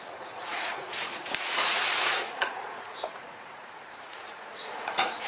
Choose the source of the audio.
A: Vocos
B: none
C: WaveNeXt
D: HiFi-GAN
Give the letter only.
A